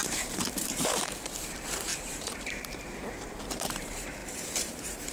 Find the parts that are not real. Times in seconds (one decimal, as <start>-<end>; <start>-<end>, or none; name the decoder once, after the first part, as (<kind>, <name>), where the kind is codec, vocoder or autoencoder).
0.0-5.1 (vocoder, BigVGAN v2)